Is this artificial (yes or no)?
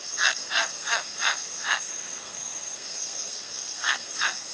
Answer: yes